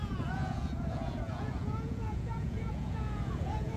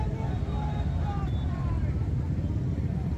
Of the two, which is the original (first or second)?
second